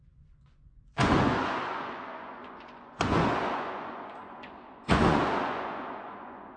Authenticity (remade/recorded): remade